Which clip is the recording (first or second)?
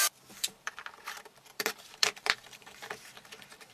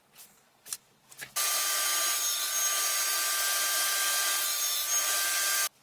second